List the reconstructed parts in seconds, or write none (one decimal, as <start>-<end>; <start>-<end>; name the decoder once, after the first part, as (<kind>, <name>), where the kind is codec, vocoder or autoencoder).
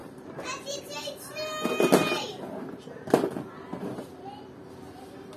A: 0.0-0.8 (vocoder, BigVGAN v2)